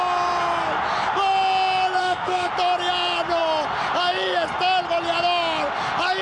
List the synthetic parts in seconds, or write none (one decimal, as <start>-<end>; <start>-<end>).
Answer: 2.0-2.5